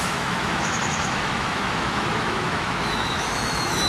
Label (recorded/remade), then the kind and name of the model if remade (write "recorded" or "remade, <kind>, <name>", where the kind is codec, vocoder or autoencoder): remade, autoencoder, DAC-VAE